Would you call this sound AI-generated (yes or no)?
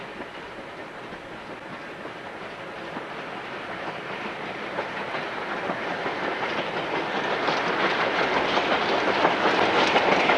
no